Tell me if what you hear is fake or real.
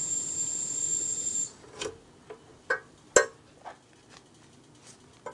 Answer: real